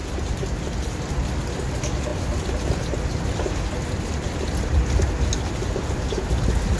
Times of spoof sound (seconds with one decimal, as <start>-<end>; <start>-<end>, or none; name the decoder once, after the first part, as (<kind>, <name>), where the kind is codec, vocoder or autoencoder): none

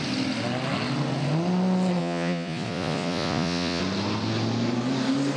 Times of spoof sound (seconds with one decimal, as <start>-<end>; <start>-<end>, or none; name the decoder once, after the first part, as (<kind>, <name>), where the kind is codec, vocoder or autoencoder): 2.0-3.8 (vocoder, Vocos)

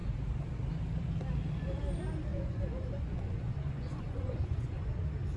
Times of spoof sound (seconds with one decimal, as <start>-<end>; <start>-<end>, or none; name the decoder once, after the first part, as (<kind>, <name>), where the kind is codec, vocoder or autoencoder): 2.3-4.9 (vocoder, Vocos)